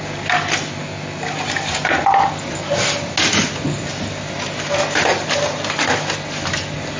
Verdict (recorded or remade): recorded